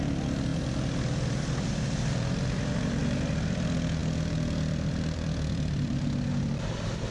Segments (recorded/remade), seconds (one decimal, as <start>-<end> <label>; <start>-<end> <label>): 0.0-7.1 remade